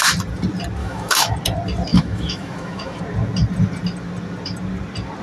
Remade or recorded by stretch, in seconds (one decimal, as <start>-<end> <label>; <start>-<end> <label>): 0.0-0.8 recorded; 0.8-1.3 remade; 1.3-1.9 recorded; 1.9-3.0 remade; 3.0-5.2 recorded